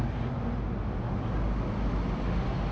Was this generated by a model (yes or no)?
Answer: no